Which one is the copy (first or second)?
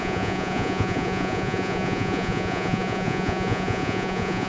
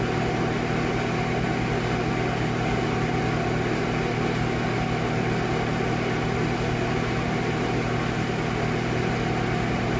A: first